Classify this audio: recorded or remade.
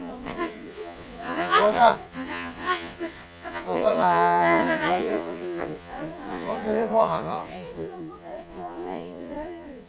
remade